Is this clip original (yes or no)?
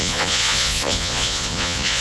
no